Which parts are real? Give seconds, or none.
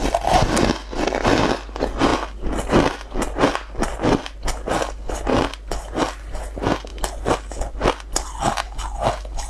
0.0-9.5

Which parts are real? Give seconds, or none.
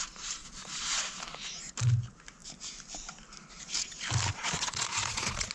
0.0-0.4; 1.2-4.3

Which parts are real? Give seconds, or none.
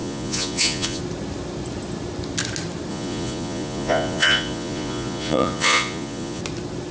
1.0-2.9; 6.4-6.9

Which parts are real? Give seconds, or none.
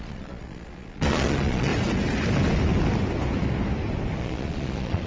1.7-4.2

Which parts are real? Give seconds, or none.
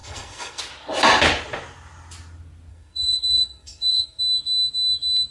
0.6-2.7; 4.2-5.3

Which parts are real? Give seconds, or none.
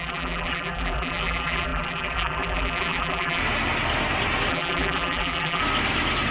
3.4-4.5; 5.6-6.3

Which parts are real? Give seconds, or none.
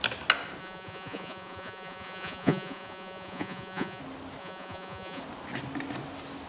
0.0-0.6; 4.0-4.4; 5.2-6.5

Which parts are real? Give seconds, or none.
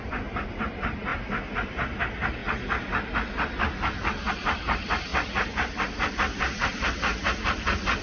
1.1-2.0; 2.4-4.3; 5.1-6.1; 7.1-8.0